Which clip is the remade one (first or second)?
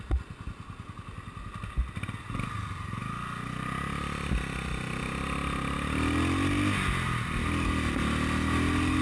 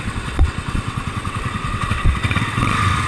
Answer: second